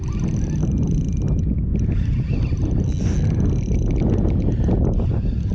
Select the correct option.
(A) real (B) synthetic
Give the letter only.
A